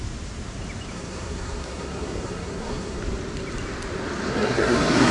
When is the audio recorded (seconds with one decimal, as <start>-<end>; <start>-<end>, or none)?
0.0-0.9; 3.0-4.3